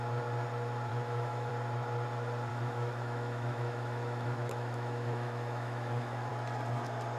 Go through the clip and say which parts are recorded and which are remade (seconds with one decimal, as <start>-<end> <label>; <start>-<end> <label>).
0.0-0.9 recorded; 0.9-1.5 remade; 1.5-2.5 recorded; 2.5-6.3 remade; 6.3-7.2 recorded